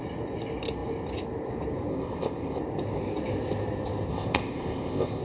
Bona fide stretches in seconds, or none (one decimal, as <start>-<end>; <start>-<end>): 0.0-1.9; 2.6-4.1